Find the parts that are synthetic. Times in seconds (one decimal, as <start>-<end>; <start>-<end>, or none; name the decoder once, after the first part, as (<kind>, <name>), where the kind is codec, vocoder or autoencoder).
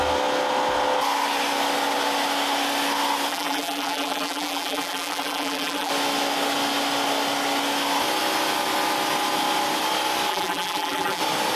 3.3-5.9 (vocoder, BigVGAN v2); 10.3-11.2